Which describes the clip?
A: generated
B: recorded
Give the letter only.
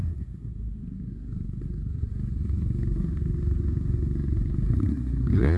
A